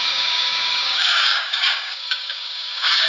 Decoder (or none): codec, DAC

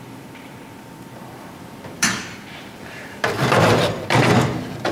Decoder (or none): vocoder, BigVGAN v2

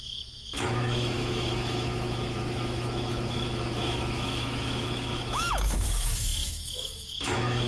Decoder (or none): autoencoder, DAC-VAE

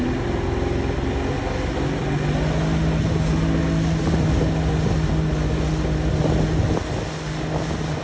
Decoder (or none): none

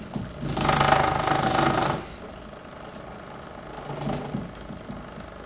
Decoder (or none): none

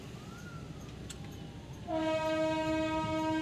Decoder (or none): none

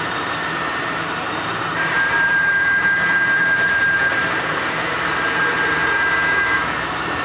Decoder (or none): vocoder, BigVGAN v2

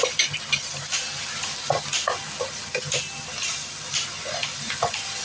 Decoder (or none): none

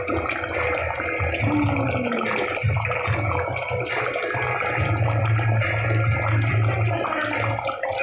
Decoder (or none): none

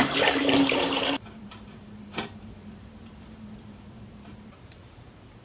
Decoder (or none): vocoder, BigVGAN v2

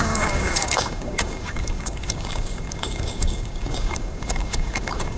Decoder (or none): codec, DAC